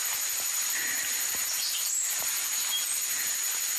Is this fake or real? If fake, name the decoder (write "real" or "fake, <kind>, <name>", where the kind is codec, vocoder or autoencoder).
fake, vocoder, BigVGAN v2